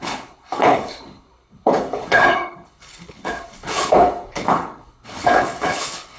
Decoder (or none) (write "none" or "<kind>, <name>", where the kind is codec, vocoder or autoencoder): codec, HILCodec